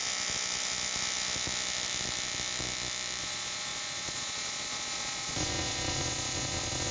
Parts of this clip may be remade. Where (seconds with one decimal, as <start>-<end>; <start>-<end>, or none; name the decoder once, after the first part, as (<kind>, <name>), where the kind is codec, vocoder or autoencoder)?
3.2-6.9 (vocoder, Vocos)